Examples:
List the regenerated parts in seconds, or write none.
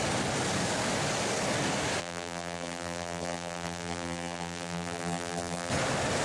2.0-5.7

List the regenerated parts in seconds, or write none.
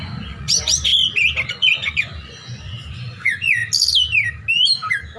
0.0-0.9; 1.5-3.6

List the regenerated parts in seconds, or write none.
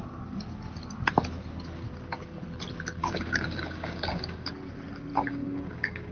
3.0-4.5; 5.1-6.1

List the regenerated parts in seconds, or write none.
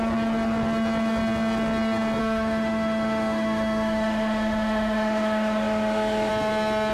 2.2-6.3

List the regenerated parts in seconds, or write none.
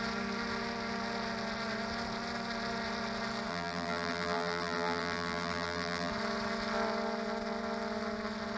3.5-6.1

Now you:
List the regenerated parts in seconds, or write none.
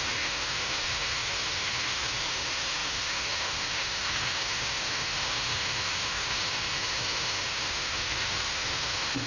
0.0-9.3